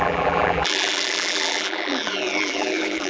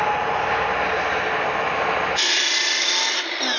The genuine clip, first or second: second